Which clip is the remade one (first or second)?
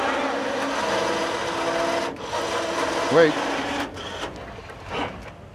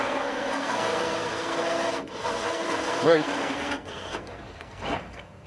second